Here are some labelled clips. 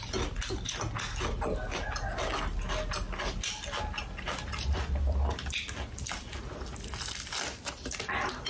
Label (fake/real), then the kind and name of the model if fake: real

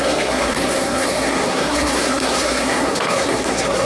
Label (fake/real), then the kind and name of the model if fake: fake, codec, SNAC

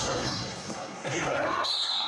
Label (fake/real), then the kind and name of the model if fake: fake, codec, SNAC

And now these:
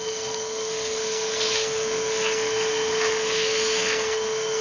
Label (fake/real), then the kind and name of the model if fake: fake, codec, SNAC